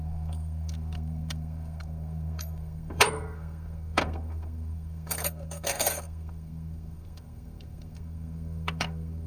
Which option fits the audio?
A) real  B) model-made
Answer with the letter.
B